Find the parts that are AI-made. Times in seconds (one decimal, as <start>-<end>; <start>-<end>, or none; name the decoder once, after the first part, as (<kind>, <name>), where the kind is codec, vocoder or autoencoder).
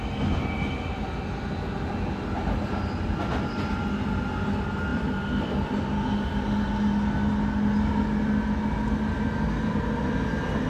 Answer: 4.9-5.7 (vocoder, BigVGAN v2)